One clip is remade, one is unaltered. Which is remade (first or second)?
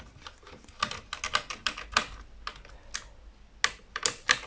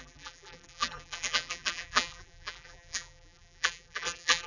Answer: second